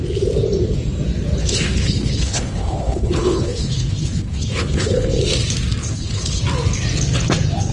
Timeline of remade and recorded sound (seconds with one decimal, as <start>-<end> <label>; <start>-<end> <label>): 0.0-1.4 recorded; 1.4-5.2 remade; 5.2-5.8 recorded; 5.8-6.4 remade; 6.4-7.7 recorded